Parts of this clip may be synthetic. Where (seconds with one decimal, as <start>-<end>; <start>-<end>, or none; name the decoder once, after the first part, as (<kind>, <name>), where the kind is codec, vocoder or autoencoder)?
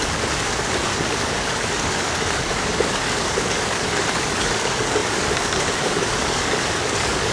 0.0-7.3 (codec, DAC)